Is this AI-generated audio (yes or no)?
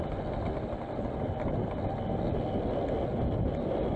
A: no